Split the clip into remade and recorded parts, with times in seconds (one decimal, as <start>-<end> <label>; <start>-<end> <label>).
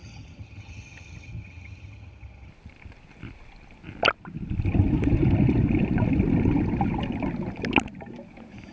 0.0-2.5 remade; 2.5-8.7 recorded